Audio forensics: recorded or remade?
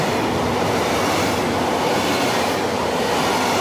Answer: recorded